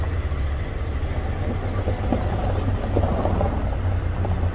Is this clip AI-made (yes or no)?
no